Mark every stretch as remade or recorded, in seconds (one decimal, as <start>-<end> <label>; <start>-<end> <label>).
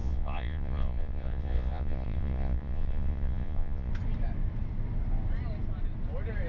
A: 0.0-3.9 remade; 3.9-6.5 recorded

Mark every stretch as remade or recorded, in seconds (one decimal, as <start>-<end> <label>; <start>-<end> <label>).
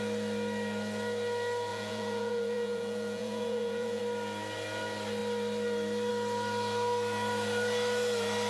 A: 0.0-1.7 recorded; 1.7-4.0 remade; 4.0-8.5 recorded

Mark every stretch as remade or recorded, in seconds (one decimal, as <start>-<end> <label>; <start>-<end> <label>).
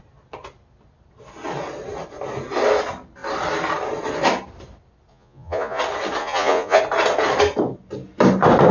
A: 0.0-5.1 recorded; 5.1-5.8 remade; 5.8-6.2 recorded; 6.2-6.8 remade; 6.8-8.7 recorded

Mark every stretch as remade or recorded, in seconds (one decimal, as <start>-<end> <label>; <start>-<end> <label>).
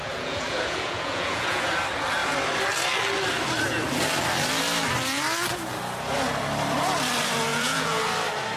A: 0.0-1.7 remade; 1.7-7.5 recorded; 7.5-8.0 remade; 8.0-8.6 recorded